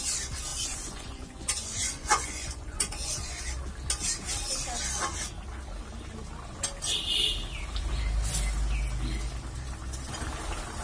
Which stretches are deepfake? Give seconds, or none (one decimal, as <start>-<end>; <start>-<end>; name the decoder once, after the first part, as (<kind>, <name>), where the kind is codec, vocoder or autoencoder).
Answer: 0.5-3.4 (vocoder, Vocos)